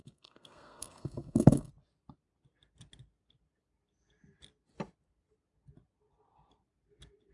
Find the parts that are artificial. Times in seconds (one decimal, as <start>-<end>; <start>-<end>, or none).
0.0-1.7